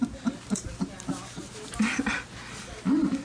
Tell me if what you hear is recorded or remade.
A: recorded